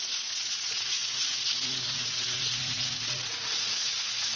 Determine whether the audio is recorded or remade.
remade